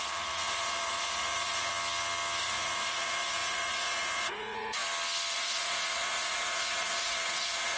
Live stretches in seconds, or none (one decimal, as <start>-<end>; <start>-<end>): 1.7-2.4; 4.8-5.3